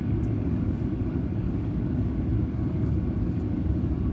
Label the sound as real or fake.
fake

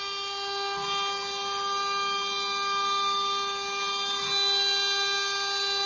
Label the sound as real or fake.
real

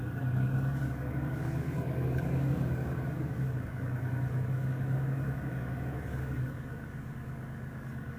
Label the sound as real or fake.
fake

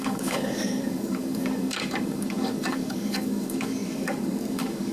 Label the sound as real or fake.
fake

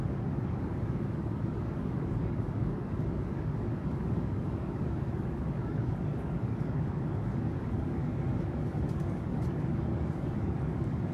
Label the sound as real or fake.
fake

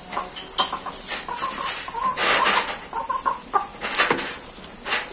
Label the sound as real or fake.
real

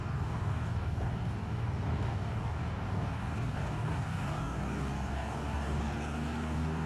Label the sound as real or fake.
fake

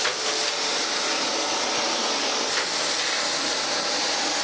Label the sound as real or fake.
real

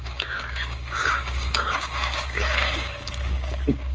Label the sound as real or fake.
fake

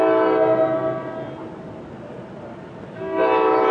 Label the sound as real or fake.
real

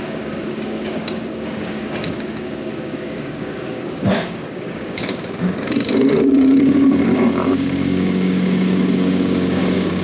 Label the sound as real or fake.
fake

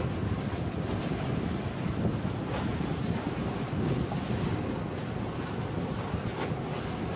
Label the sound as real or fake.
real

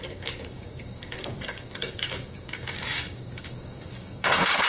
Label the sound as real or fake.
fake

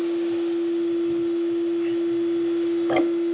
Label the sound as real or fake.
real